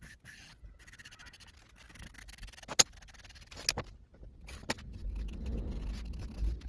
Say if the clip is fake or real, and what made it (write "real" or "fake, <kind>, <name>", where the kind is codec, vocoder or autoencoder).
real